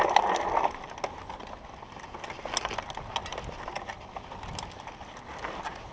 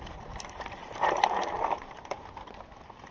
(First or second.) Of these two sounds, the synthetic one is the second